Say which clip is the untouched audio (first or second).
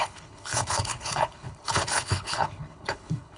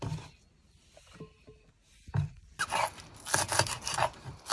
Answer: second